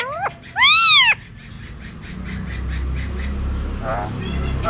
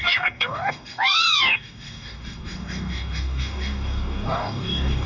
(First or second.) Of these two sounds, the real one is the first